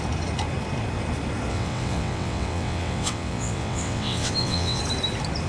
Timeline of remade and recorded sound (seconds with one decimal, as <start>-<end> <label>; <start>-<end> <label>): 0.0-1.5 recorded; 1.5-4.8 remade; 4.8-5.5 recorded